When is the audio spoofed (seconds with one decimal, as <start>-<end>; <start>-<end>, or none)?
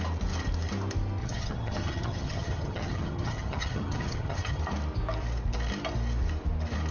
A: 1.2-4.6